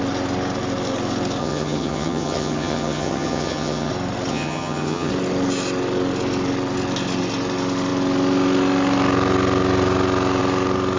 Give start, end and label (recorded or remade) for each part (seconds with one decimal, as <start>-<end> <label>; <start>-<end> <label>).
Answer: 0.0-1.4 recorded; 1.4-3.9 remade; 3.9-4.3 recorded; 4.3-5.1 remade; 5.1-11.0 recorded